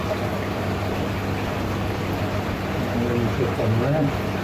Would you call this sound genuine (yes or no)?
yes